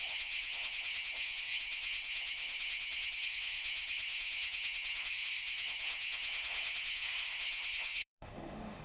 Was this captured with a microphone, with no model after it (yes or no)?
no